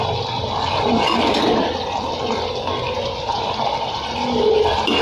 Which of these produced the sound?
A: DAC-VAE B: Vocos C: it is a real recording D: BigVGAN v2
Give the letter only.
C